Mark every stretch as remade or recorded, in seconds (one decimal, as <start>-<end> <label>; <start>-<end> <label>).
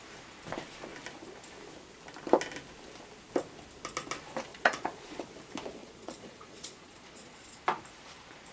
0.0-4.5 recorded; 4.5-5.2 remade; 5.2-5.8 recorded; 5.8-7.6 remade; 7.6-8.5 recorded